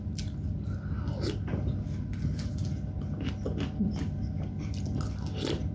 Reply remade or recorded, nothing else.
recorded